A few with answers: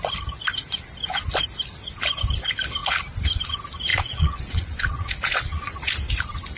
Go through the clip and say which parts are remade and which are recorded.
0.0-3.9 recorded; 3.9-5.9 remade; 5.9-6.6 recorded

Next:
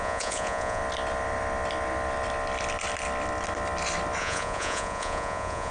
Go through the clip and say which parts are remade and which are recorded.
0.0-0.8 remade; 0.8-4.2 recorded; 4.2-5.7 remade

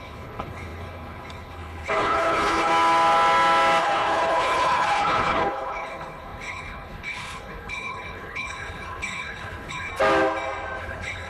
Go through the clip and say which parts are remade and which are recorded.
0.0-2.7 remade; 2.7-3.8 recorded; 3.8-9.9 remade; 9.9-10.8 recorded; 10.8-11.3 remade

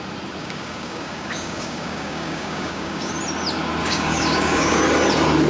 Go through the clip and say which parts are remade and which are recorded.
0.0-0.4 recorded; 0.4-3.1 remade; 3.1-3.8 recorded; 3.8-4.8 remade; 4.8-5.5 recorded